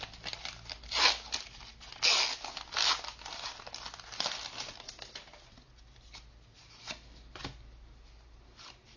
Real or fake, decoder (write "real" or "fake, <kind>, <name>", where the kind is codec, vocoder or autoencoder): real